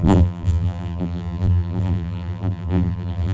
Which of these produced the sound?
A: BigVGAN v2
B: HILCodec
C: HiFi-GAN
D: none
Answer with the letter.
A